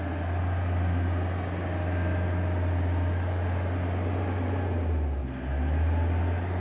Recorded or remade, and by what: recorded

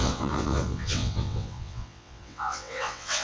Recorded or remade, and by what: remade, vocoder, WaveNeXt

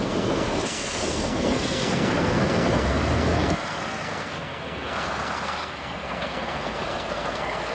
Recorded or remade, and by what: remade, codec, SNAC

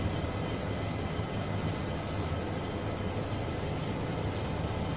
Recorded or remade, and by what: recorded